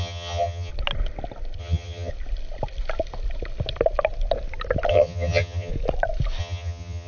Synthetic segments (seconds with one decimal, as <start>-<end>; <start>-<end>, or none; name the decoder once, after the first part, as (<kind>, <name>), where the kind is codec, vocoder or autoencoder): 0.0-0.7 (vocoder, HiFi-GAN); 1.6-2.1; 4.9-5.7; 6.4-7.1